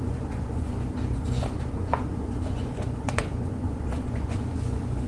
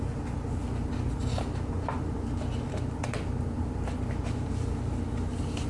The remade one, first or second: first